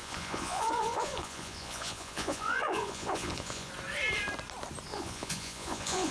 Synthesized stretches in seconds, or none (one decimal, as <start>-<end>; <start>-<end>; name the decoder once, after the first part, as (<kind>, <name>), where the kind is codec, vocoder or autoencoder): 0.0-3.7 (vocoder, Vocos); 4.9-6.1